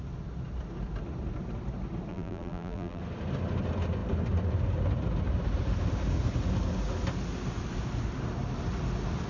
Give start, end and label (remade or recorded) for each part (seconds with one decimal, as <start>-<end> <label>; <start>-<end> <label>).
0.0-2.1 recorded; 2.1-3.0 remade; 3.0-9.3 recorded